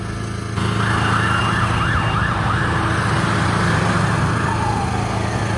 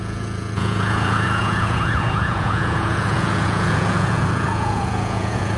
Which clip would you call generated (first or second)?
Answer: second